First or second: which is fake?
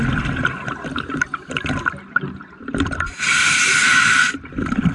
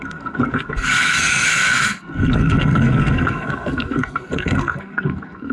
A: second